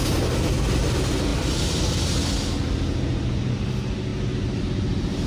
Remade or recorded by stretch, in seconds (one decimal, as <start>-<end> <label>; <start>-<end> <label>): 0.0-5.3 recorded